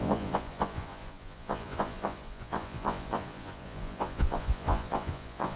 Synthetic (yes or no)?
yes